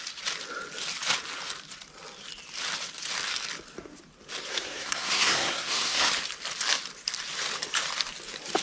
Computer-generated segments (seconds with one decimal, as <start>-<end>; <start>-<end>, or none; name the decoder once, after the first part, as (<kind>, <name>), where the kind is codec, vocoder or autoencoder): 4.5-6.1 (codec, SNAC)